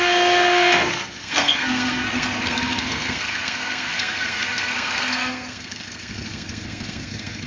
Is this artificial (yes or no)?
yes